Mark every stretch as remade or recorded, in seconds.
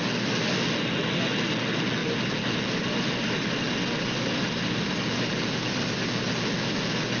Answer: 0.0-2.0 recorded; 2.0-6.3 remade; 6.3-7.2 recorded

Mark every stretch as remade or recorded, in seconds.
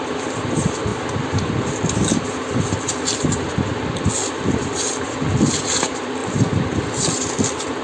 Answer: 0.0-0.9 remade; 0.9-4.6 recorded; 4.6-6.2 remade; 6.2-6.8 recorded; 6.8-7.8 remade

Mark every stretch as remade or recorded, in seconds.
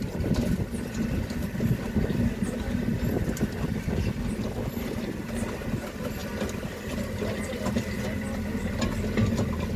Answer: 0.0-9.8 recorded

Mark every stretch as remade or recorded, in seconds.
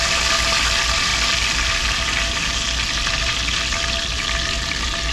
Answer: 0.0-5.1 recorded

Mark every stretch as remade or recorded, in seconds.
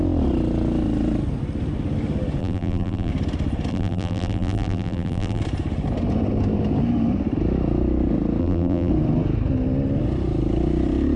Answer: 0.0-2.4 recorded; 2.4-3.1 remade; 3.1-3.7 recorded; 3.7-5.4 remade; 5.4-8.4 recorded; 8.4-8.9 remade; 8.9-11.2 recorded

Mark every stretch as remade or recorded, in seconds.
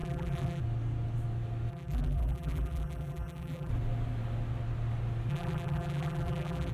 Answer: 0.0-0.6 remade; 0.6-1.7 recorded; 1.7-3.7 remade; 3.7-5.3 recorded; 5.3-6.7 remade